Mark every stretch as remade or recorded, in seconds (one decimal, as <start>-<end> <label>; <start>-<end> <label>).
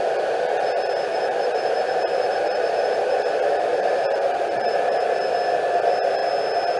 0.0-1.1 recorded; 1.1-5.2 remade; 5.2-6.8 recorded